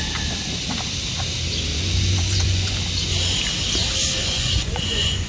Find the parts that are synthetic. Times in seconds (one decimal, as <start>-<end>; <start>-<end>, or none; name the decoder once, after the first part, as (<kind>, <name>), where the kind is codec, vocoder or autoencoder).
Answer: 1.7-2.8 (vocoder, Vocos); 4.2-5.3